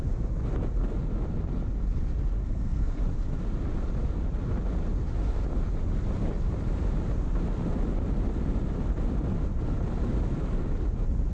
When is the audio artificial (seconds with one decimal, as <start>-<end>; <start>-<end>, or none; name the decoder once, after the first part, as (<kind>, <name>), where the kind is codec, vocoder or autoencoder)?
2.4-3.0 (codec, SNAC)